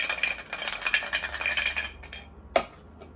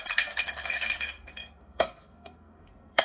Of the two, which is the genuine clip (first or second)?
first